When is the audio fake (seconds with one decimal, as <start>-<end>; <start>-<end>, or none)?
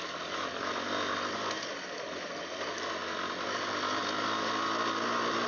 none